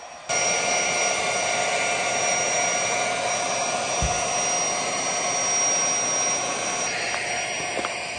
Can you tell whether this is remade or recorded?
recorded